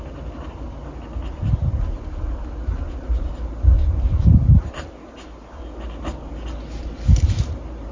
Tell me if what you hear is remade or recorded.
recorded